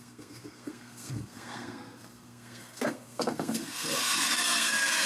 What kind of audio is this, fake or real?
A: fake